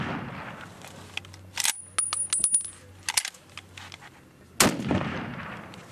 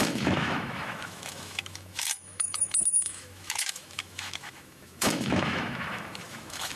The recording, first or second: first